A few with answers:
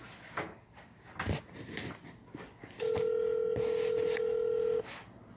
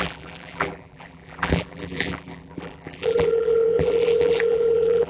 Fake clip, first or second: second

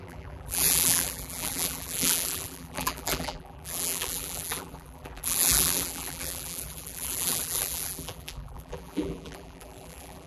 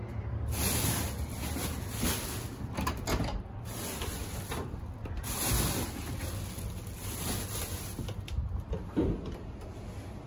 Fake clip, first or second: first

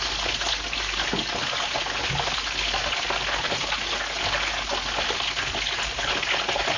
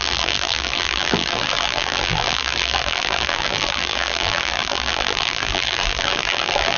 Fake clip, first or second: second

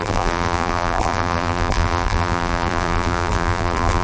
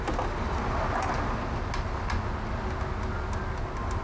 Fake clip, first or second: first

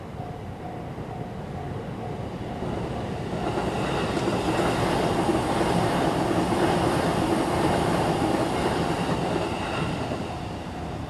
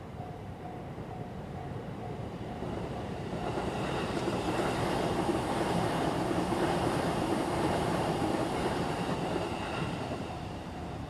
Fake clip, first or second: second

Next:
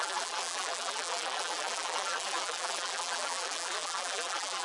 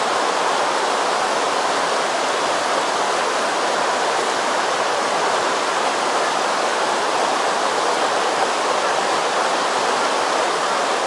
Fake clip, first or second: first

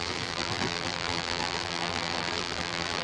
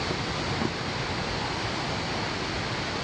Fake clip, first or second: first